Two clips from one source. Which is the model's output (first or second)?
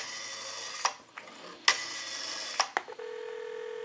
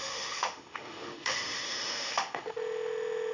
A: second